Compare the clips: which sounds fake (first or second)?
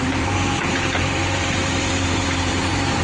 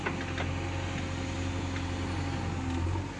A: first